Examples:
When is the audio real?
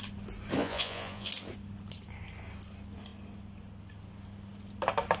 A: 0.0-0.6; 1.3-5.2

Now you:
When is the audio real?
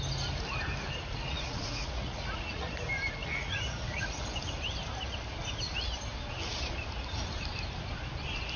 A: 0.0-1.1; 2.7-3.2; 4.3-8.6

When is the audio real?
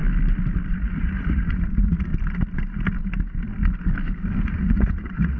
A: 0.0-0.7; 2.1-4.4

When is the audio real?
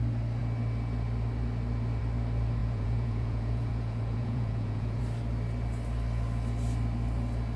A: 0.0-2.6; 5.0-7.6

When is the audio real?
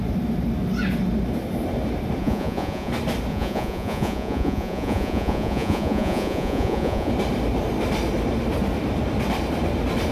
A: 0.0-2.2; 2.9-3.3; 7.1-10.1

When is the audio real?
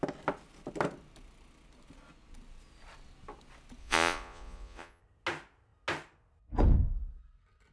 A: 0.0-3.8; 5.0-7.7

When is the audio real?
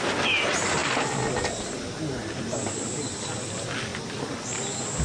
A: 0.0-5.0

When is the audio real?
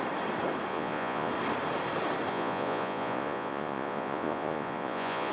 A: 0.0-0.7; 1.3-2.3